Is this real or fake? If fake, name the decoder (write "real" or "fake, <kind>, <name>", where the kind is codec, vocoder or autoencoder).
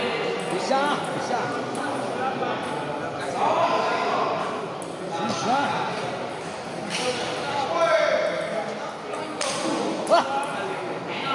real